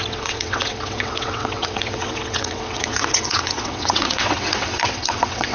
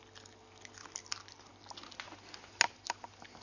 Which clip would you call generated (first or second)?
first